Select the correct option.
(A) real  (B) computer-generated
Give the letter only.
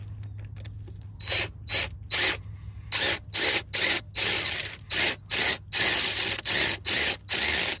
A